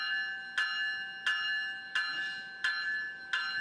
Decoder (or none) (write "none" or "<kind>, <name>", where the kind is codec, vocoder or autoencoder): none